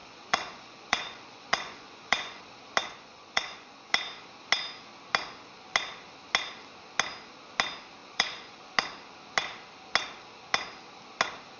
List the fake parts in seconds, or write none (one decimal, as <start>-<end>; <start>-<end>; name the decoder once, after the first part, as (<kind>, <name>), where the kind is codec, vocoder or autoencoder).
0.0-2.4 (vocoder, Vocos); 2.8-3.9; 8.0-8.6